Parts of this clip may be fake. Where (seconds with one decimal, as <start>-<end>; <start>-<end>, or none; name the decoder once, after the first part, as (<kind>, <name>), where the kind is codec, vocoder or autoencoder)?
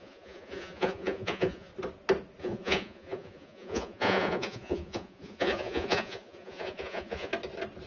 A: 0.0-1.7 (vocoder, Vocos); 2.4-7.3